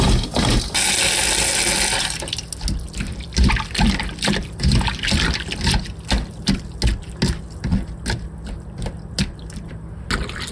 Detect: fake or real real